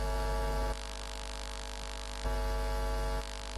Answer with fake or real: real